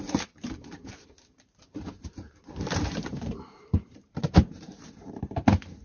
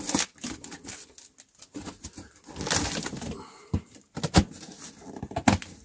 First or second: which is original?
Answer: second